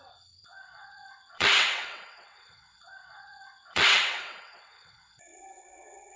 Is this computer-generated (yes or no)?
yes